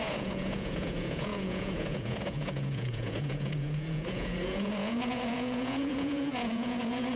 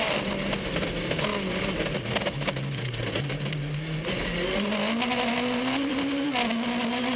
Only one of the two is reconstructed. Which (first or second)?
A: first